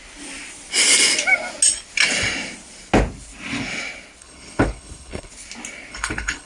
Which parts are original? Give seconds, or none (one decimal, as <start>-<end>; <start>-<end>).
0.0-4.2; 5.3-5.9